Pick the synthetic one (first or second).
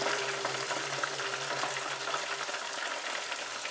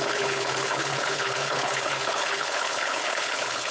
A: second